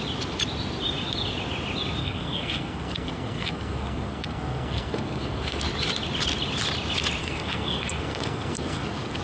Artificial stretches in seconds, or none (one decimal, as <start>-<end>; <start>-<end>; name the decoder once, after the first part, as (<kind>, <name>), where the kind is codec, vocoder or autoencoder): 2.0-5.6 (codec, SNAC); 7.2-9.2